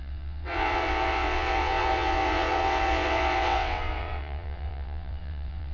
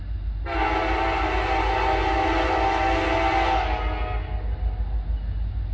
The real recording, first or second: second